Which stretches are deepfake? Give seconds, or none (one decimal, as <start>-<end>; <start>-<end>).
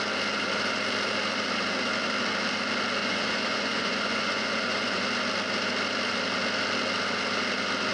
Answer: 3.0-5.0